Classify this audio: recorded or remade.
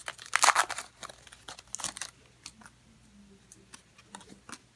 recorded